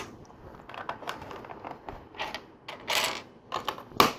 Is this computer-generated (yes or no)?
no